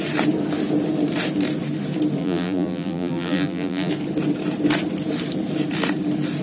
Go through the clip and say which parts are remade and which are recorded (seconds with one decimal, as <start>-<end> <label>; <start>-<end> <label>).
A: 0.0-2.2 recorded; 2.2-3.9 remade; 3.9-6.4 recorded